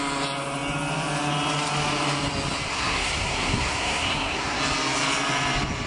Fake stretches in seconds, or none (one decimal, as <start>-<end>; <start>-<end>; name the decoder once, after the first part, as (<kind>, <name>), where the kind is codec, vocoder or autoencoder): 2.7-4.6 (codec, SNAC)